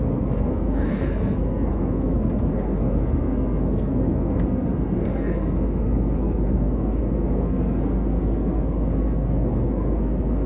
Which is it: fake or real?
fake